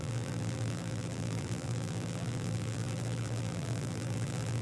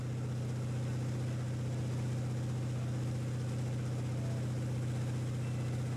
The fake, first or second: first